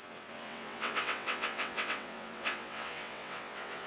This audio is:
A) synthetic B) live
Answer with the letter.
A